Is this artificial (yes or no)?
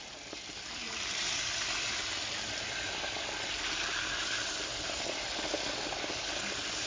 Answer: no